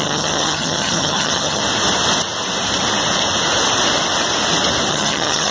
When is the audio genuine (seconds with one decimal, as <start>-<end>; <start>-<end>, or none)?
1.6-4.9